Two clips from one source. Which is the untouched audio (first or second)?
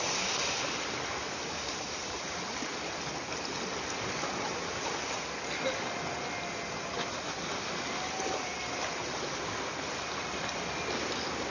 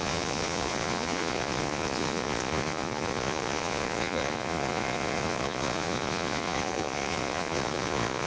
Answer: first